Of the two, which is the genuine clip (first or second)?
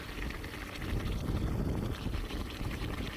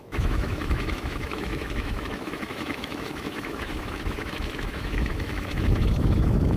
first